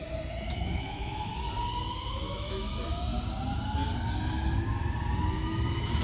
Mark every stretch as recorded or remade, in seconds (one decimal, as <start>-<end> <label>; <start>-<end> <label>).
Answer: 0.0-0.5 recorded; 0.5-1.3 remade; 1.3-2.1 recorded; 2.1-3.1 remade; 3.1-5.3 recorded; 5.3-6.0 remade